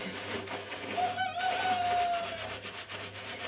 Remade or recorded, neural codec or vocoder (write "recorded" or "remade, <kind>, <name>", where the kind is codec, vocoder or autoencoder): recorded